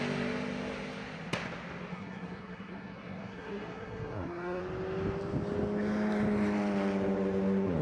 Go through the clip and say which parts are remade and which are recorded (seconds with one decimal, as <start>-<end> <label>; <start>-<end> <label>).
0.0-1.9 recorded; 1.9-4.6 remade; 4.6-7.8 recorded